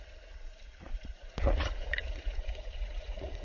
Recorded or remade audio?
remade